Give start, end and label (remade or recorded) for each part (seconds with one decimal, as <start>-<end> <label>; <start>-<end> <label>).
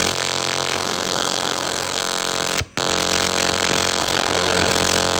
0.0-0.7 recorded; 0.7-2.0 remade; 2.0-4.0 recorded; 4.0-4.7 remade; 4.7-5.2 recorded